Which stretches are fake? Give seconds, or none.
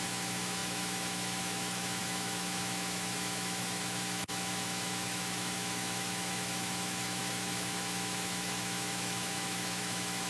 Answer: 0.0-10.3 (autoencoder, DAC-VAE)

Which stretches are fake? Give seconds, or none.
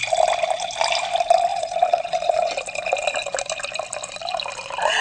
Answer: 1.5-2.5 (vocoder, Vocos)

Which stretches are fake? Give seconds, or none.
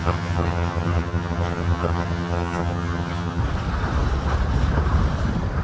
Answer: 0.0-3.4 (vocoder, HiFi-GAN)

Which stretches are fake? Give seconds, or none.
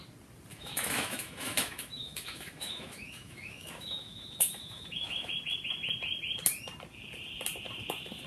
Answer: 0.5-5.3 (autoencoder, DAC-VAE)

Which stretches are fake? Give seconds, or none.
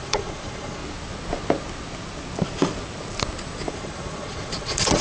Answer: 0.0-0.8 (vocoder, Vocos); 3.7-5.0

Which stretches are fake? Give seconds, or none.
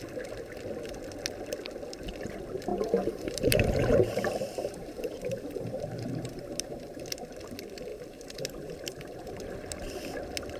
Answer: 2.7-7.0 (vocoder, BigVGAN v2); 7.9-9.3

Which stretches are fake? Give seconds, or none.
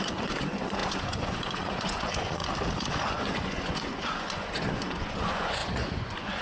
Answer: 0.0-2.4 (vocoder, Vocos); 2.9-6.4